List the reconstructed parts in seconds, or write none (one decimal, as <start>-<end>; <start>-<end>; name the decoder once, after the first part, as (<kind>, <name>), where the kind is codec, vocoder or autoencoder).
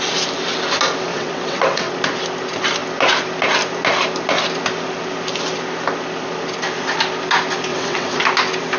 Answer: 1.1-1.9 (vocoder, WaveNeXt); 7.7-8.2